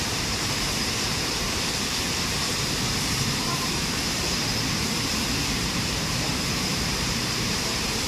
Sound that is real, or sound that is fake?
fake